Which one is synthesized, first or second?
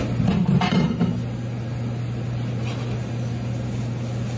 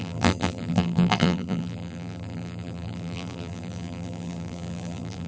second